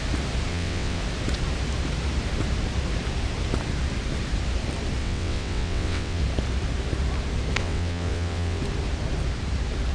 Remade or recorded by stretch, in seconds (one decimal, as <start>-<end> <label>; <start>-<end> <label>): 0.0-0.5 recorded; 0.5-1.0 remade; 1.0-5.0 recorded; 5.0-6.2 remade; 6.2-7.6 recorded; 7.6-8.6 remade; 8.6-9.9 recorded